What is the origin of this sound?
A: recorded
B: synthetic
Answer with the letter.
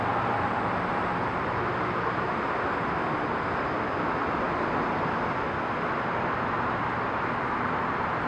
A